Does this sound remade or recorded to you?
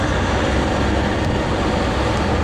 recorded